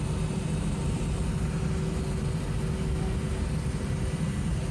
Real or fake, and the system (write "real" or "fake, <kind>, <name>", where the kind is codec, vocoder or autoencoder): real